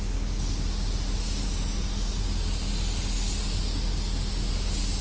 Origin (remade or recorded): recorded